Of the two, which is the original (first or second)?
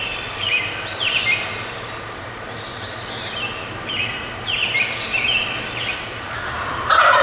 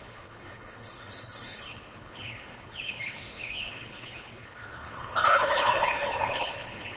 first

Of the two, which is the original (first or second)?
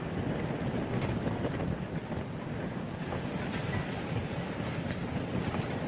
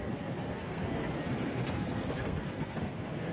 first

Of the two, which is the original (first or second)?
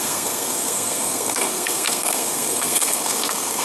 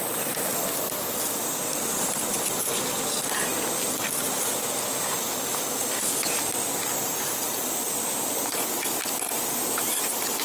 second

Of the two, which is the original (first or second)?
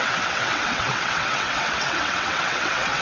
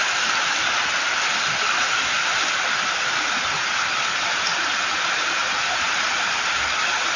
second